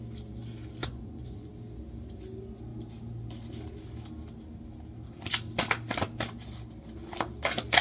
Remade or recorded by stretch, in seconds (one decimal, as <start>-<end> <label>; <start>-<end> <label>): 0.0-0.8 recorded; 0.8-1.5 remade; 1.5-7.8 recorded